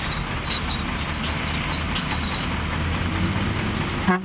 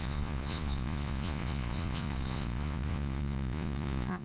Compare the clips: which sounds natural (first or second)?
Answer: first